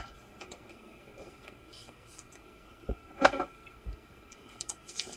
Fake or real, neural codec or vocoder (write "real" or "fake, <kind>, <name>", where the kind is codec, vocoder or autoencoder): fake, codec, SNAC